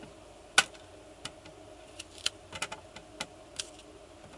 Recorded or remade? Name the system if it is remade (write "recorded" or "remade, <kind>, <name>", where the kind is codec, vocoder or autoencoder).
recorded